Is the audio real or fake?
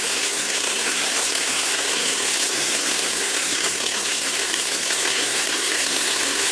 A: fake